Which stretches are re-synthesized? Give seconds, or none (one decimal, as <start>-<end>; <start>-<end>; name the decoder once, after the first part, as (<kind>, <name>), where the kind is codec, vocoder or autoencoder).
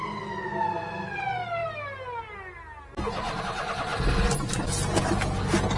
none